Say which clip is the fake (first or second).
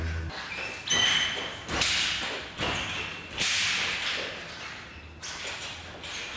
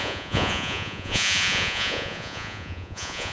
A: second